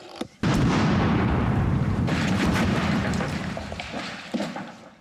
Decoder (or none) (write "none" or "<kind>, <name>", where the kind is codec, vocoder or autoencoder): vocoder, BigVGAN v2